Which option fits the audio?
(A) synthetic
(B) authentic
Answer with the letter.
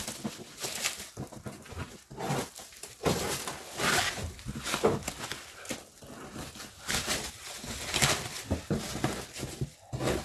B